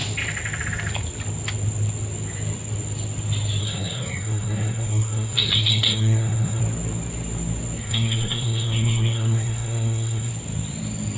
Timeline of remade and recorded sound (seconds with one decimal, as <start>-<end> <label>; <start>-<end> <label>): 0.0-3.6 recorded; 3.6-6.6 remade; 6.6-7.8 recorded; 7.8-10.3 remade; 10.3-11.2 recorded